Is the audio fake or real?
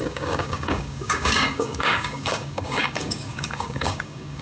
fake